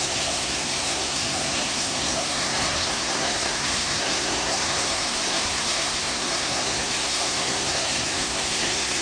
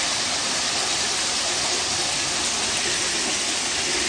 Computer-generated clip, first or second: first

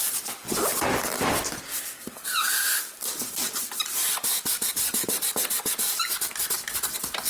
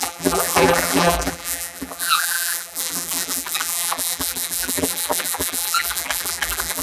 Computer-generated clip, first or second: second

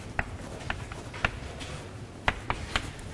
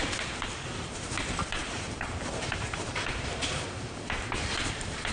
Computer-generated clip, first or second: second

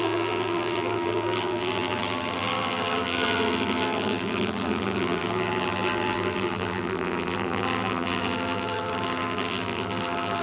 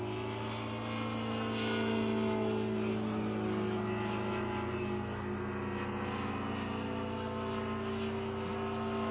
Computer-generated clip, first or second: first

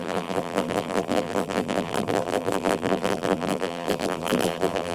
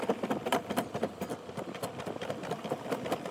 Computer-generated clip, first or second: first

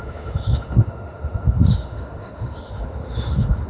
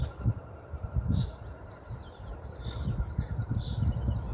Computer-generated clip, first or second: first